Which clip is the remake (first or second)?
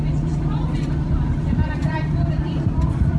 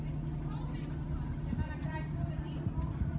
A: first